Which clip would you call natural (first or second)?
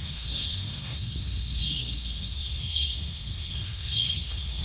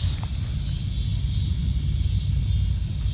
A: second